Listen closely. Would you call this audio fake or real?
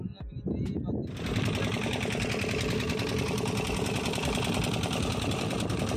real